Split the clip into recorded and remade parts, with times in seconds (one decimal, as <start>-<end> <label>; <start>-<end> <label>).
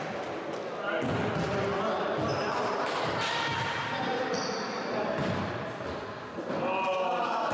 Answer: 0.0-2.3 recorded; 2.3-4.4 remade; 4.4-7.5 recorded